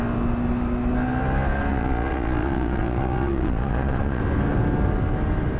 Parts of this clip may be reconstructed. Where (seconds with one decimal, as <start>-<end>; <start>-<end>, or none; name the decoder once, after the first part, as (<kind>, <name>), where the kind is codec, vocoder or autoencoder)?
1.7-4.2 (vocoder, Vocos)